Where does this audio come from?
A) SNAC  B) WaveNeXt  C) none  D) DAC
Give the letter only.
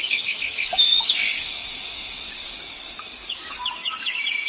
D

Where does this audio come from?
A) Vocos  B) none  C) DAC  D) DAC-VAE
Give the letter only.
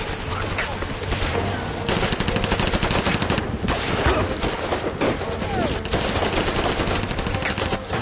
B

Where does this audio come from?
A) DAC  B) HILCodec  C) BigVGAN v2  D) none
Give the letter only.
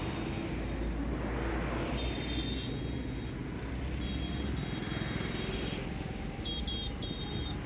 D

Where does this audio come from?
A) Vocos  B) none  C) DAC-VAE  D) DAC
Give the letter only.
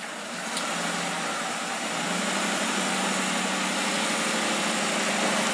B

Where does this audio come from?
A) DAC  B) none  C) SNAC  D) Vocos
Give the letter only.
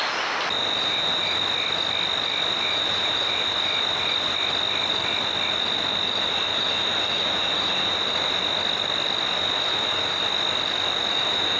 B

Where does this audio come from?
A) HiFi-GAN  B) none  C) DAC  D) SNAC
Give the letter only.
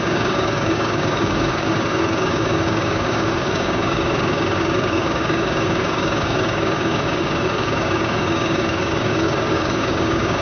C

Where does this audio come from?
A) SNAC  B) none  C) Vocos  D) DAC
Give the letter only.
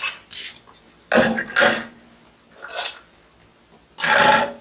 B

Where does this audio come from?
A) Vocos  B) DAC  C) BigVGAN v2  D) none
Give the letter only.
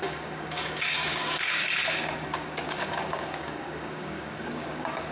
B